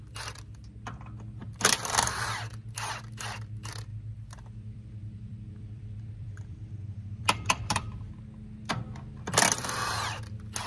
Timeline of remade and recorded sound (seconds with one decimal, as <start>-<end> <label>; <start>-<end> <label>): 0.0-3.9 recorded; 3.9-8.1 remade; 8.1-10.7 recorded